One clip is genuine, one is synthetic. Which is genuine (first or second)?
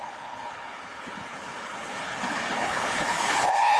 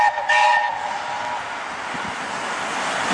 second